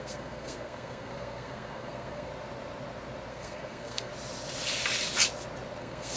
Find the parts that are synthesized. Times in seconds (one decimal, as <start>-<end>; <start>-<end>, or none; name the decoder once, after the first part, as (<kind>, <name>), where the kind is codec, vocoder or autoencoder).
0.0-2.3 (codec, SNAC); 3.3-4.1; 5.8-6.2